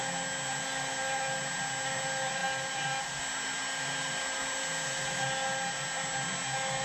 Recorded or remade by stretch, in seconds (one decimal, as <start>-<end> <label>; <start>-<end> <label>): 0.0-6.8 recorded